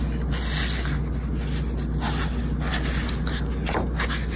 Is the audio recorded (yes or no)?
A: yes